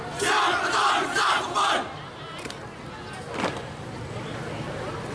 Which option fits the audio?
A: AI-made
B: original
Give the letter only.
B